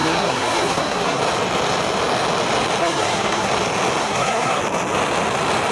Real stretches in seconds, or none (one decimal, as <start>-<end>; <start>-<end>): 1.2-2.8; 3.5-4.0; 4.6-5.7